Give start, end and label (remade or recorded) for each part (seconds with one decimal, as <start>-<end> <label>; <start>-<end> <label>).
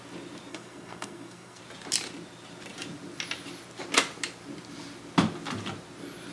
0.0-0.5 recorded; 0.5-1.6 remade; 1.6-6.3 recorded